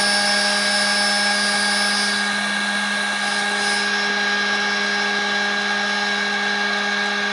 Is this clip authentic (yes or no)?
yes